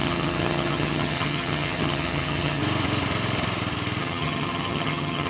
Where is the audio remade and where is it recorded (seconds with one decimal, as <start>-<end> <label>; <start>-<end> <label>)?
0.0-2.6 remade; 2.6-4.0 recorded; 4.0-5.3 remade